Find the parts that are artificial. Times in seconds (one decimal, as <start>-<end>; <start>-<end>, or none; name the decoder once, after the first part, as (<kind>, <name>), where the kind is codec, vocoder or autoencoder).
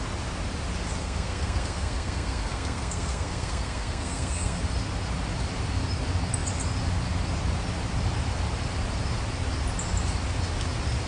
1.0-4.6 (codec, SNAC)